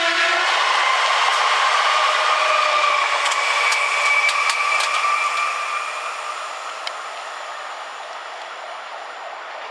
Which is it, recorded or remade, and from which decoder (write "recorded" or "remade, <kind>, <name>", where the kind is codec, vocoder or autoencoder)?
recorded